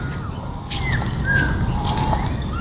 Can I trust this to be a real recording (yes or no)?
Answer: yes